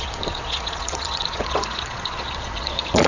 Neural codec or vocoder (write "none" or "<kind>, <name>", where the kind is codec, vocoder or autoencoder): vocoder, Vocos